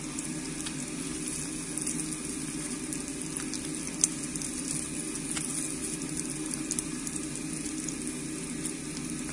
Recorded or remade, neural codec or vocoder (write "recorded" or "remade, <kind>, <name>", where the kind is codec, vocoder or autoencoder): recorded